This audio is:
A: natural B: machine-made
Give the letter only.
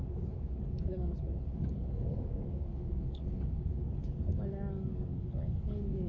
B